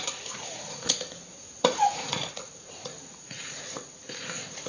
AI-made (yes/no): yes